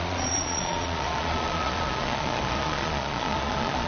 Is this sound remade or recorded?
remade